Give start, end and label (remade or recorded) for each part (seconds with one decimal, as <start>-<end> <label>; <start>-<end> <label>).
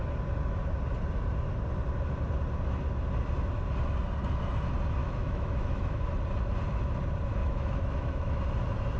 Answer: 0.0-5.0 recorded; 5.0-6.2 remade; 6.2-7.4 recorded; 7.4-8.4 remade; 8.4-9.0 recorded